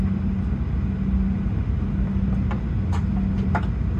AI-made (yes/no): no